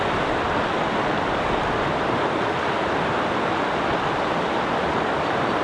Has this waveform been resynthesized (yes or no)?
no